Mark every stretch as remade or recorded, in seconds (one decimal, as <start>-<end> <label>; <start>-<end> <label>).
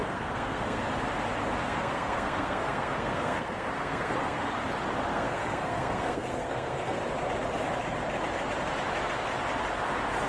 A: 0.0-0.8 remade; 0.8-1.6 recorded; 1.6-4.5 remade; 4.5-5.1 recorded; 5.1-7.0 remade; 7.0-10.3 recorded